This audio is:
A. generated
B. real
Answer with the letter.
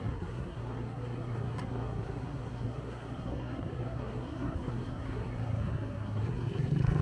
A